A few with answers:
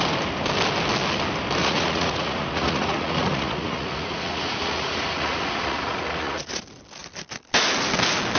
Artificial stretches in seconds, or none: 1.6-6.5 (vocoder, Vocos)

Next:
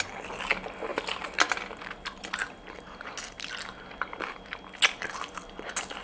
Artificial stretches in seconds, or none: none